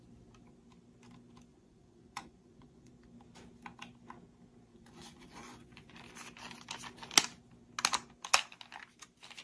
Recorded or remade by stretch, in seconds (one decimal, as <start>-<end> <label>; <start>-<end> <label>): 0.0-1.5 recorded; 1.5-2.9 remade; 2.9-4.7 recorded; 4.7-6.0 remade; 6.0-9.4 recorded